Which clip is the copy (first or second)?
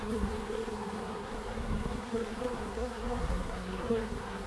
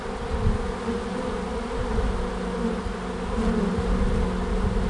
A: first